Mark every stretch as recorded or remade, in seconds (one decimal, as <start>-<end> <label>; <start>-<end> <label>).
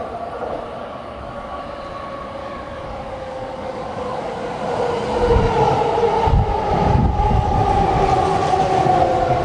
0.0-0.8 recorded; 0.8-1.6 remade; 1.6-2.4 recorded; 2.4-4.3 remade; 4.3-9.4 recorded